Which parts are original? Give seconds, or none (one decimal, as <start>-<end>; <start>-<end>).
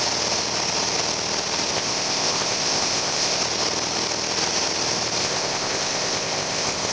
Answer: 0.0-1.7; 3.4-5.2